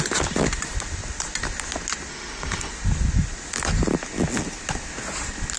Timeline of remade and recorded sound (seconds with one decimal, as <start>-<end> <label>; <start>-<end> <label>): 0.0-2.1 recorded; 2.1-2.7 remade; 2.7-5.6 recorded